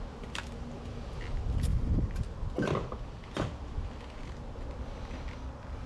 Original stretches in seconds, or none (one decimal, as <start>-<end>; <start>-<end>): 0.0-5.9